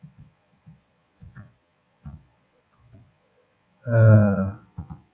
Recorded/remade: remade